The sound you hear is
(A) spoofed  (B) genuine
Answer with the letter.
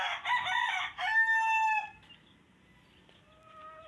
B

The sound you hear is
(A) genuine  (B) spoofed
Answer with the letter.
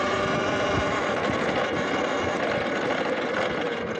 A